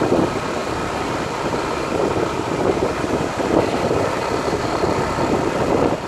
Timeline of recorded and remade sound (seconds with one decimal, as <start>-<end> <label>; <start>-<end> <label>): 0.0-6.1 recorded